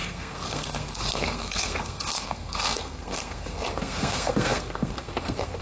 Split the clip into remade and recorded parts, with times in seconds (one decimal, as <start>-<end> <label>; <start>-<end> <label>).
0.0-5.6 remade